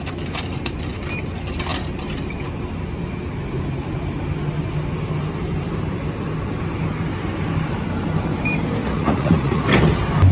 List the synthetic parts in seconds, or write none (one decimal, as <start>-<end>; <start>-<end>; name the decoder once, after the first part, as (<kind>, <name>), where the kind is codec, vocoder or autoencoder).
8.8-9.6 (vocoder, Vocos)